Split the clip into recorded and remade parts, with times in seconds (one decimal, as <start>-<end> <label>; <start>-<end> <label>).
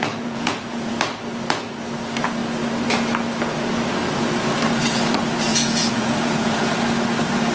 0.0-0.9 remade; 0.9-5.5 recorded; 5.5-6.7 remade; 6.7-7.5 recorded